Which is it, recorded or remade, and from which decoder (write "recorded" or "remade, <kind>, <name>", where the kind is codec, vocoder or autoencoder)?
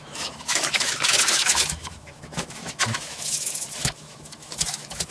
remade, autoencoder, DAC-VAE